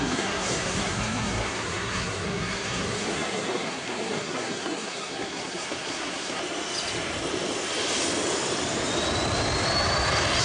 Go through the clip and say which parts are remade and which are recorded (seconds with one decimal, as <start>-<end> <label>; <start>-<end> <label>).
0.0-6.4 remade; 6.4-10.4 recorded